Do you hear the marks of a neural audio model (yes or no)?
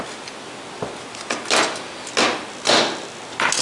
no